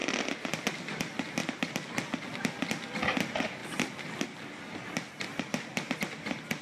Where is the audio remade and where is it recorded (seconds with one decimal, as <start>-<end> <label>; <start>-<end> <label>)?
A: 0.0-1.4 recorded; 1.4-1.9 remade; 1.9-6.6 recorded